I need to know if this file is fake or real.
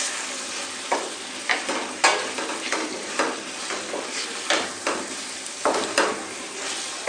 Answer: fake